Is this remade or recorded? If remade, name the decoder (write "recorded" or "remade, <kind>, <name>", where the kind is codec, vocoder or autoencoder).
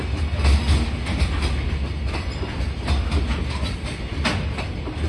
recorded